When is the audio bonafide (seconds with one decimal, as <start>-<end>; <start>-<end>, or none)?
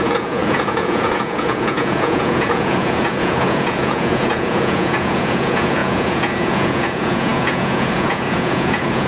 none